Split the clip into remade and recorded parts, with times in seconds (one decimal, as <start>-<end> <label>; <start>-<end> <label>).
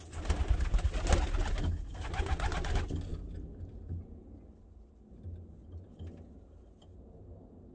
0.0-7.7 recorded